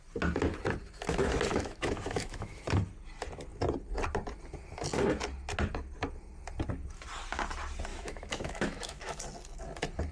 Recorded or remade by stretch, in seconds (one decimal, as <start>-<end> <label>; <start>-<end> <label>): 0.0-1.5 recorded; 1.5-2.6 remade; 2.6-7.9 recorded; 7.9-9.2 remade; 9.2-10.1 recorded